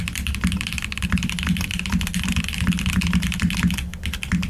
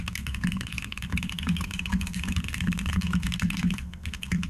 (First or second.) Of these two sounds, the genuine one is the first